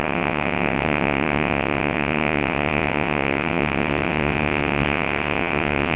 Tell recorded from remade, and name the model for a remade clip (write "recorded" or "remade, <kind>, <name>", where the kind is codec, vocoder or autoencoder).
remade, vocoder, WaveNeXt